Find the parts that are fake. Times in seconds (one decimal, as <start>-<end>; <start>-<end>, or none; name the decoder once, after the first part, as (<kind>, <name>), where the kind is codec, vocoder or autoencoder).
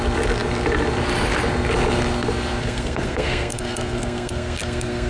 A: 2.6-5.1 (codec, SNAC)